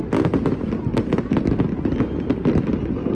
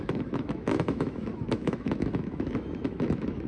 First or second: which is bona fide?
first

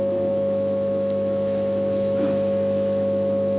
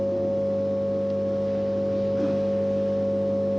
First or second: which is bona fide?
second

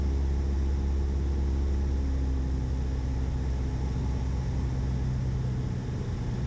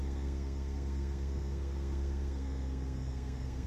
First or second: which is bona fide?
first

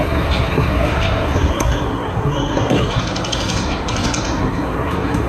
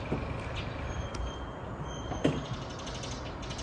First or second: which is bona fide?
second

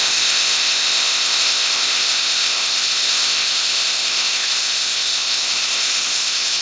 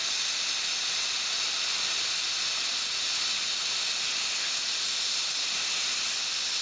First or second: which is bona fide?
second